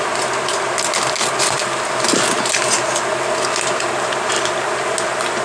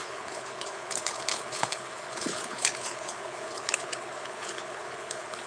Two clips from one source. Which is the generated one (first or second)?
second